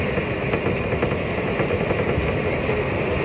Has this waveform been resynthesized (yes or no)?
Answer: no